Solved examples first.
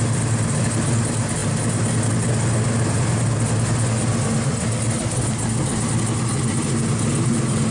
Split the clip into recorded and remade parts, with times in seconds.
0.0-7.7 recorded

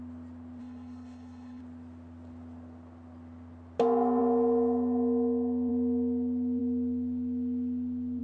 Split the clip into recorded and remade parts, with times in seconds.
0.0-0.6 recorded; 0.6-1.6 remade; 1.6-8.2 recorded